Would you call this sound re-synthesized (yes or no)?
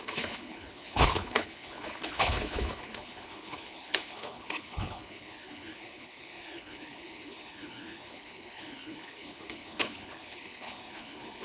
yes